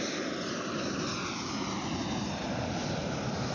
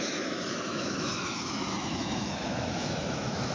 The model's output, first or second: second